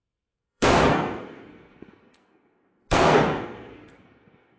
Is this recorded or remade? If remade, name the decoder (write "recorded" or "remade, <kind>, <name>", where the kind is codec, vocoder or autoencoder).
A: remade, codec, SNAC